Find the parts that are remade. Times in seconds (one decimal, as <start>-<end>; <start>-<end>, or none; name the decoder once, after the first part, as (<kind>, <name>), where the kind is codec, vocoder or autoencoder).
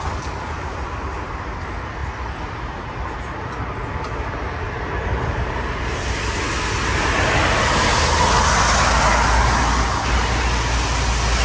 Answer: none